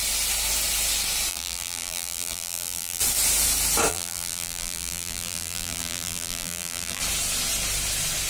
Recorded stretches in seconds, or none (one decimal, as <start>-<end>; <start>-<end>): 0.0-1.3; 3.0-3.9; 7.0-8.3